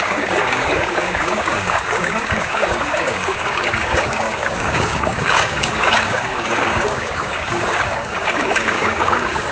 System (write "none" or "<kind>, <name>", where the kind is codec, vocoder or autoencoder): codec, DAC